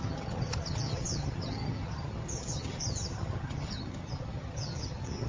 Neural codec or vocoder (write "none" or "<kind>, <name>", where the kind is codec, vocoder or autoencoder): vocoder, HiFi-GAN